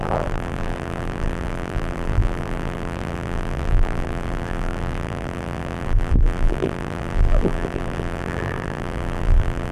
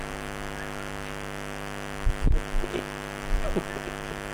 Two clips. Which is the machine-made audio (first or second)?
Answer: first